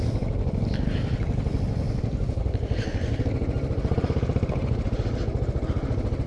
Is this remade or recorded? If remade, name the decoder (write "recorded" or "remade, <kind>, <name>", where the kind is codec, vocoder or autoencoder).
recorded